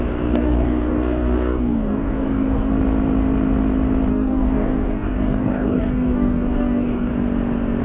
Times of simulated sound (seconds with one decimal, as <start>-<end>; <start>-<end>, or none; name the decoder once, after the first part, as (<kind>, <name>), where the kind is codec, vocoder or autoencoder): 0.0-2.7 (codec, DAC); 4.1-7.1